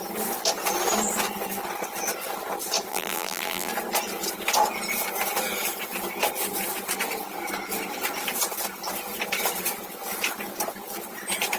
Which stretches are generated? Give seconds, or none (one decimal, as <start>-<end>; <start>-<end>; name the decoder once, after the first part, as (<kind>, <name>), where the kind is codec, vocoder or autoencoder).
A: 2.9-3.7 (vocoder, BigVGAN v2)